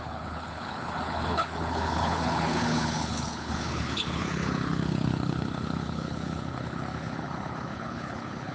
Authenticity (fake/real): fake